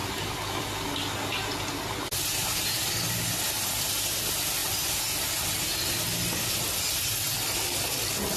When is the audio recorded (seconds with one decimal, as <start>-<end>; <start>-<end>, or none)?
0.0-2.4; 2.9-8.4